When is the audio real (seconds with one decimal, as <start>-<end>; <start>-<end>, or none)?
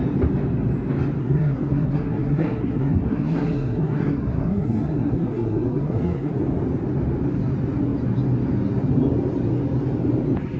0.0-1.2; 6.3-10.6